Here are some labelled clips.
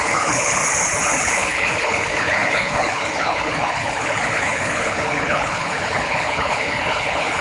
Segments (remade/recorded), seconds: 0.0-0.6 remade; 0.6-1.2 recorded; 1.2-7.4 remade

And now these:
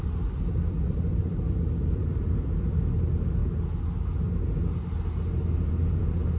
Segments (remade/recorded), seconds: 0.0-3.4 remade; 3.4-5.7 recorded; 5.7-6.4 remade

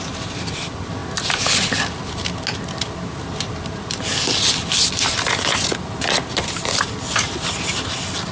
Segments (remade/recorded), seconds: 0.0-8.3 recorded

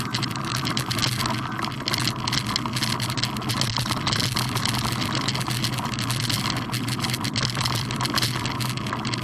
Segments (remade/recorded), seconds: 0.0-9.2 recorded

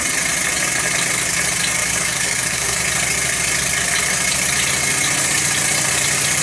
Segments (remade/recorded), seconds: 0.0-1.8 recorded; 1.8-2.8 remade; 2.8-6.4 recorded

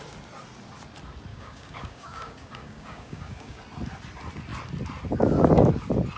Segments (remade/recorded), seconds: 0.0-1.3 recorded; 1.3-3.6 remade; 3.6-6.2 recorded